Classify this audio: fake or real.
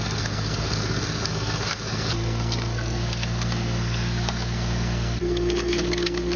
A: fake